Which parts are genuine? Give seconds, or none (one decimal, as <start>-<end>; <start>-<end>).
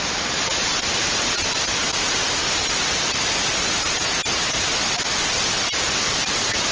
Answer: 0.0-6.7